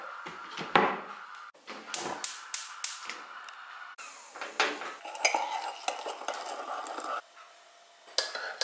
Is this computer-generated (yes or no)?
no